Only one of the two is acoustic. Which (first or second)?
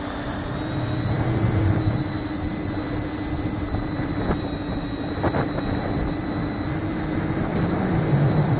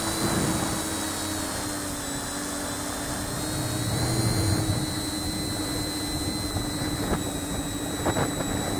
second